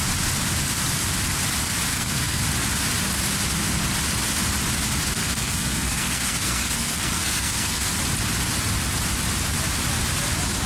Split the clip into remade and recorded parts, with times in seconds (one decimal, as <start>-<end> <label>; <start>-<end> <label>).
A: 0.0-1.9 recorded; 1.9-2.4 remade; 2.4-5.2 recorded; 5.2-7.9 remade; 7.9-10.7 recorded